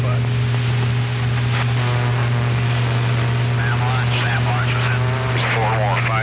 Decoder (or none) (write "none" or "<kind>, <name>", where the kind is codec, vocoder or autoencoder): none